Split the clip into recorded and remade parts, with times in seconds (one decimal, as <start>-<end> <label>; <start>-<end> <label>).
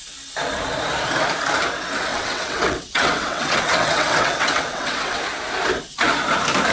0.0-2.1 recorded; 2.1-5.2 remade; 5.2-6.7 recorded